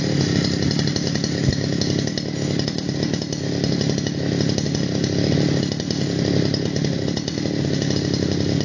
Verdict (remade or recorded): recorded